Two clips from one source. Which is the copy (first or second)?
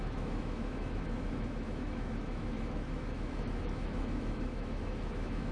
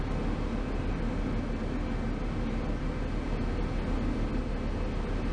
first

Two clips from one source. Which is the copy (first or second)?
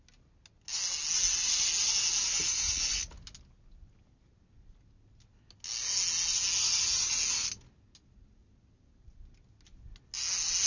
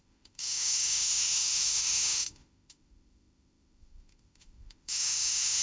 second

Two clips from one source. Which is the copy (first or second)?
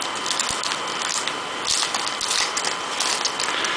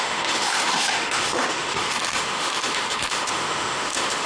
second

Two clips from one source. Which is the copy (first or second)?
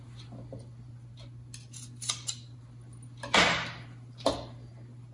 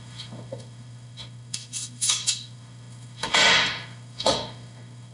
second